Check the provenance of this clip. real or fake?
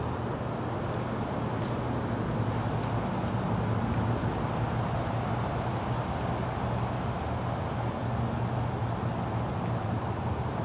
real